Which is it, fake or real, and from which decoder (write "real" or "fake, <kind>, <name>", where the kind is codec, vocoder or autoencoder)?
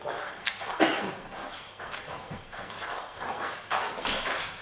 fake, codec, SNAC